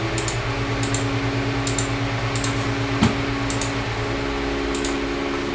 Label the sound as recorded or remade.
recorded